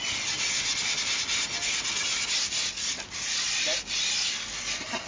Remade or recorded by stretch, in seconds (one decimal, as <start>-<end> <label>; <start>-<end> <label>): 0.0-5.1 recorded